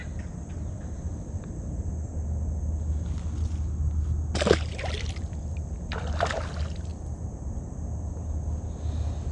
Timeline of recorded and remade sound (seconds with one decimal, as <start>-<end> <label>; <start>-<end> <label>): 0.0-0.5 recorded; 0.5-2.1 remade; 2.1-4.7 recorded; 4.7-6.9 remade; 6.9-9.3 recorded

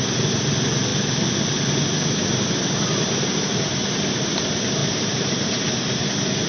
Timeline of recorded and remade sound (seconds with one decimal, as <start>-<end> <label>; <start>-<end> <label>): 0.0-6.5 recorded

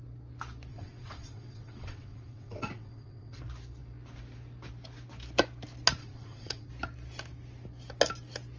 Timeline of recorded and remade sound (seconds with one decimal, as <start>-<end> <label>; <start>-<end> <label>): 0.0-0.7 recorded; 0.7-3.4 remade; 3.4-6.0 recorded; 6.0-6.7 remade; 6.7-8.6 recorded

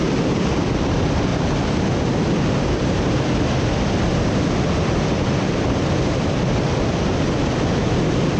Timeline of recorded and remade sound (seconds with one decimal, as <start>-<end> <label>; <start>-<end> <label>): 0.0-1.3 remade; 1.3-2.3 recorded; 2.3-8.4 remade

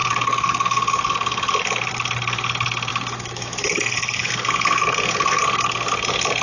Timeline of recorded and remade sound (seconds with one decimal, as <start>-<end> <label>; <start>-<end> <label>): 0.0-2.9 recorded; 2.9-4.3 remade; 4.3-6.4 recorded

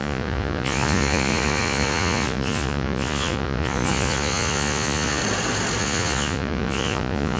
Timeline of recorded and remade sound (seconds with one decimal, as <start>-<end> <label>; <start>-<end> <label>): 0.0-5.2 remade; 5.2-5.8 recorded; 5.8-7.4 remade

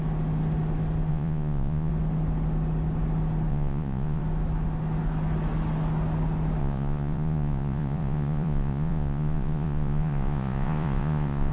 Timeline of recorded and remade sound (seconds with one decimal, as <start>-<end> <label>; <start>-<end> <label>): 0.0-1.1 recorded; 1.1-1.9 remade; 1.9-3.5 recorded; 3.5-4.2 remade; 4.2-6.6 recorded; 6.6-11.5 remade